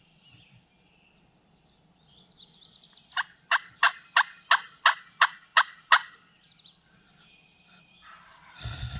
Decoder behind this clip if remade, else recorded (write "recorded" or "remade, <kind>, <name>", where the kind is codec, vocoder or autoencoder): recorded